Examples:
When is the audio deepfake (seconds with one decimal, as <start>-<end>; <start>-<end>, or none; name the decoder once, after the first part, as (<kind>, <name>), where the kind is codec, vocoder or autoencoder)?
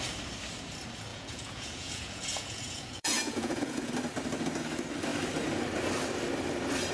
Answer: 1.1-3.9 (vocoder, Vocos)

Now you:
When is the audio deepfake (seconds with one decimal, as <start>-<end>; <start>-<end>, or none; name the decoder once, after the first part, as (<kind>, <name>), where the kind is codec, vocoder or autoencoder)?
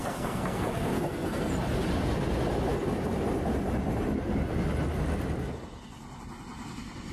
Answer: 0.0-1.5 (codec, SNAC)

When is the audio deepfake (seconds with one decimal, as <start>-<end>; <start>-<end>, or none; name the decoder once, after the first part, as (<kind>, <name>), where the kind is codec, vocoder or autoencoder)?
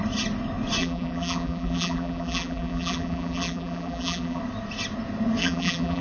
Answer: 0.8-4.4 (vocoder, BigVGAN v2); 5.4-6.0